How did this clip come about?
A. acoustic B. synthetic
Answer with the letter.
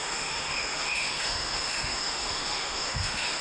B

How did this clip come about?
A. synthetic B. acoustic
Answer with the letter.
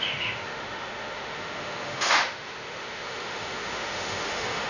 A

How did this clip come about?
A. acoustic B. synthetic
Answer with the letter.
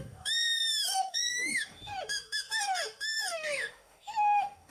B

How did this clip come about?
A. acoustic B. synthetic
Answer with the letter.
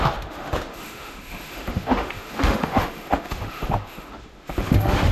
B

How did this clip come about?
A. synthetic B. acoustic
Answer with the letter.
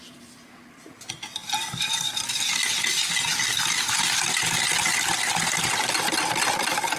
B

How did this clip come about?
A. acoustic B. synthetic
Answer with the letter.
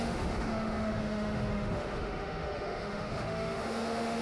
B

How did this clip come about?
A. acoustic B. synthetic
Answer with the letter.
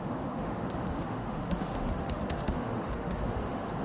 B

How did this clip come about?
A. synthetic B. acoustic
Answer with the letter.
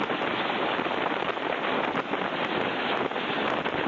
B